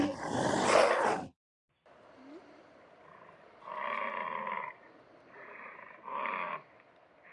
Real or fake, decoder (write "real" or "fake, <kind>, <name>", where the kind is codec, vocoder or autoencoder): real